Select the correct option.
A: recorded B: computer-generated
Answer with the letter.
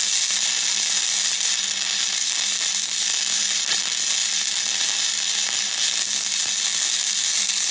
A